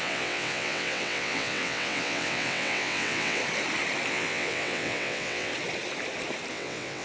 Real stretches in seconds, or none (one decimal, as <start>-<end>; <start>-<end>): 3.4-4.1; 5.5-6.5